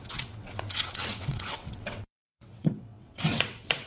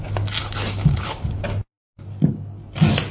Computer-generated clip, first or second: first